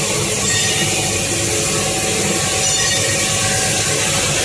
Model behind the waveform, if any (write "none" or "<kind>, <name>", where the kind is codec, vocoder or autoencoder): none